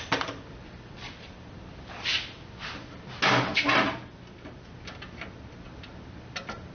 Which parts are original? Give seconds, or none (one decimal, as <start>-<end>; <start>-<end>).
0.0-6.7